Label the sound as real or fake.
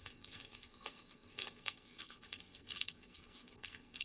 fake